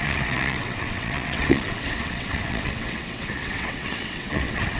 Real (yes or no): no